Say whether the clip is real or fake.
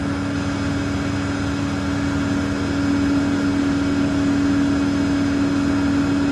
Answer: real